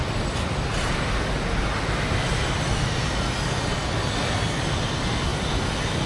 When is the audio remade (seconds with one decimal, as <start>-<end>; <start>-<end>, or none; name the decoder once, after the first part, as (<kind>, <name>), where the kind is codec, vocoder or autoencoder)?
none